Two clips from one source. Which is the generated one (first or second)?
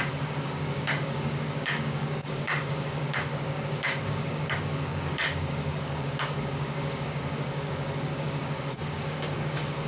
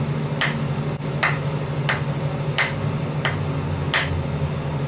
first